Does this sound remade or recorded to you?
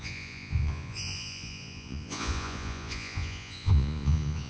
remade